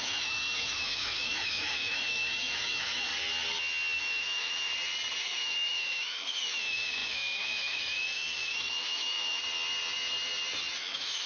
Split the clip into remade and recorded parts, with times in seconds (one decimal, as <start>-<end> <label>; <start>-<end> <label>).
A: 0.0-3.1 remade; 3.1-4.0 recorded; 4.0-4.7 remade; 4.7-5.2 recorded; 5.2-9.4 remade; 9.4-10.8 recorded; 10.8-11.3 remade

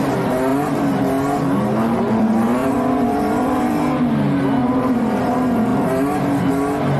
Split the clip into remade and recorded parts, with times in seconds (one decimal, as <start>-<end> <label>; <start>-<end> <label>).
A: 0.0-0.5 recorded; 0.5-1.0 remade; 1.0-2.6 recorded; 2.6-3.8 remade; 3.8-4.6 recorded; 4.6-5.2 remade; 5.2-7.0 recorded

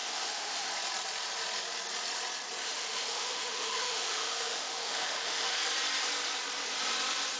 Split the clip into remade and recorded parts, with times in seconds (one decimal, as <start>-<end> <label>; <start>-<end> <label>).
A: 0.0-0.7 remade; 0.7-2.6 recorded; 2.6-5.6 remade; 5.6-7.4 recorded